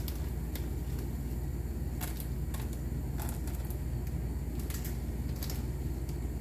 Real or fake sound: real